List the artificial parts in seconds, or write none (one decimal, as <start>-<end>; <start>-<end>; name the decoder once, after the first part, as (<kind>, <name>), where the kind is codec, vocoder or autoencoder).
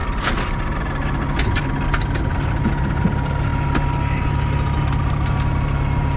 none